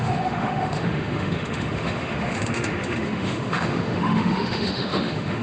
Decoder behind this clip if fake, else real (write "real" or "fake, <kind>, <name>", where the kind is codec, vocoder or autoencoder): fake, autoencoder, DAC-VAE